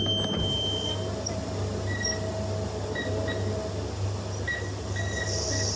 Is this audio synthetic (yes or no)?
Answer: no